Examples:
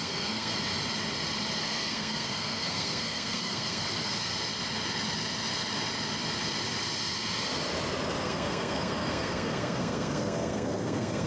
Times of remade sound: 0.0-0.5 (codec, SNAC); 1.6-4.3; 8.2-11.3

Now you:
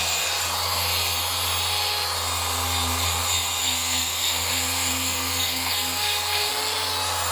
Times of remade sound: 3.6-6.5 (codec, SNAC)

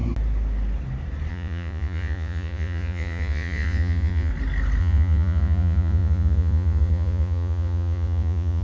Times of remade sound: 1.3-4.3 (vocoder, Vocos); 4.8-8.6

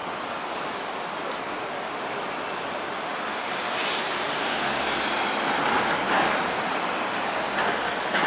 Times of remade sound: none

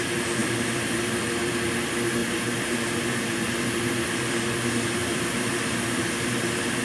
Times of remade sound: 0.4-1.2 (vocoder, BigVGAN v2); 2.2-3.4; 5.0-6.0

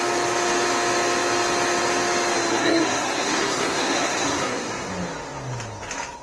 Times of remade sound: 2.5-4.9 (codec, SNAC)